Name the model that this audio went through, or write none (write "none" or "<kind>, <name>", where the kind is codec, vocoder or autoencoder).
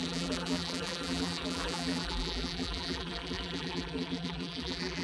vocoder, BigVGAN v2